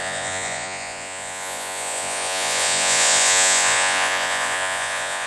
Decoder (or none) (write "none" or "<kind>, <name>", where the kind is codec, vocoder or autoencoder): vocoder, Vocos